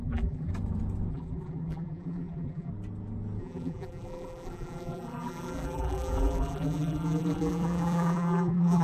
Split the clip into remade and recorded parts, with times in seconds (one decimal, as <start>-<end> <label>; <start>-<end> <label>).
0.0-0.5 remade; 0.5-1.1 recorded; 1.1-2.7 remade; 2.7-3.4 recorded; 3.4-8.8 remade